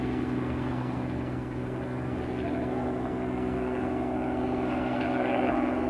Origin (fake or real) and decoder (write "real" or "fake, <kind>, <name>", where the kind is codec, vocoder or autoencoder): fake, codec, SNAC